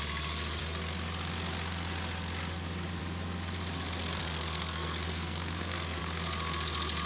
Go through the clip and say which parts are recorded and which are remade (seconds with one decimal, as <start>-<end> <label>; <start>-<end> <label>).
0.0-4.2 recorded; 4.2-6.0 remade; 6.0-7.1 recorded